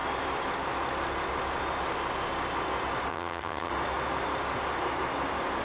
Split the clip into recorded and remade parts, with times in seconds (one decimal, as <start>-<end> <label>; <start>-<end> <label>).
0.0-3.1 recorded; 3.1-3.7 remade; 3.7-5.6 recorded